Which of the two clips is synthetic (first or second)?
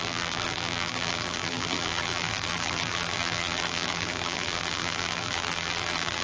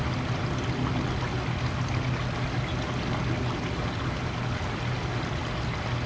first